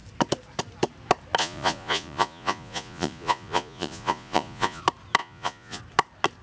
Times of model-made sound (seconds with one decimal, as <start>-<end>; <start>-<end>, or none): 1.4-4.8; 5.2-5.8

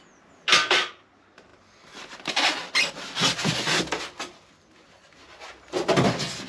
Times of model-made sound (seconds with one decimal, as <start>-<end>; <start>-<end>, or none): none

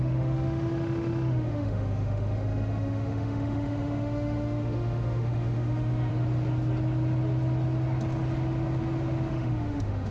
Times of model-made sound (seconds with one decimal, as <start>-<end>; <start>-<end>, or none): 0.0-6.1; 9.3-10.1

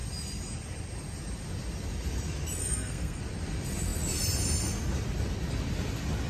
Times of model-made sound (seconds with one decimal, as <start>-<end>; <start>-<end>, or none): 2.6-3.2